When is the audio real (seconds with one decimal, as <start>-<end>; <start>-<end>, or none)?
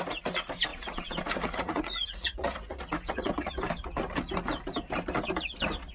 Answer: 0.0-0.7; 3.5-5.9